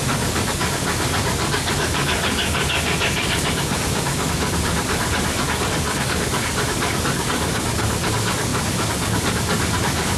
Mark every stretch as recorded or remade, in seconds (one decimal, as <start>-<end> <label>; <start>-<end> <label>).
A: 0.0-10.2 remade